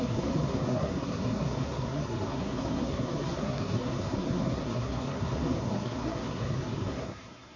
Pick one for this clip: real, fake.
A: fake